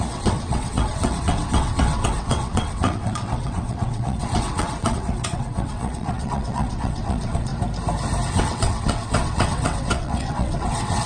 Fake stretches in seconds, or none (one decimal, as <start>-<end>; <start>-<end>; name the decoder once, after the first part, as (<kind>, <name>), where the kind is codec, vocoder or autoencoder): 0.0-7.5 (vocoder, WaveNeXt); 8.3-11.1